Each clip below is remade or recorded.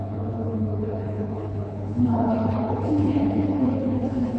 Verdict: remade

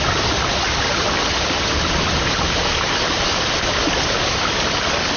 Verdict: recorded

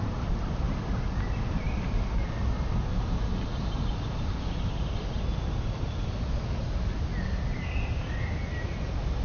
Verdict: recorded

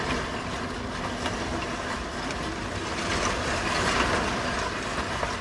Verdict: recorded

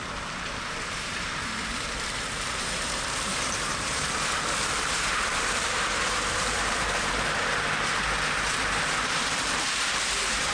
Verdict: remade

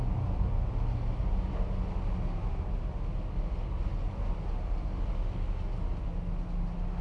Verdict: recorded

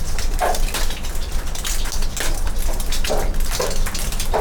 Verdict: recorded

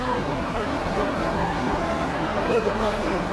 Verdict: remade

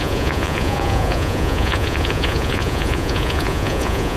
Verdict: remade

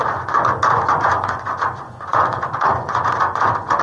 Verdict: remade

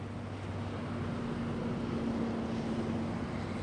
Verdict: recorded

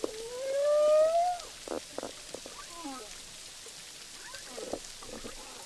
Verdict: recorded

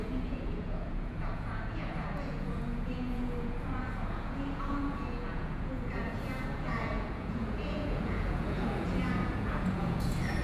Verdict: remade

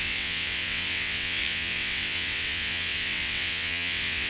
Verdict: remade